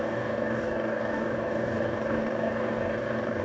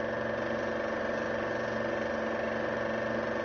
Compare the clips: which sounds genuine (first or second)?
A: second